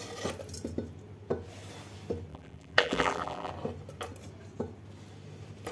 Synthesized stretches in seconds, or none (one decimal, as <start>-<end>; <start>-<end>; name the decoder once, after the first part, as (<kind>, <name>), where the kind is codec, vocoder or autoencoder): 2.3-3.5 (vocoder, BigVGAN v2)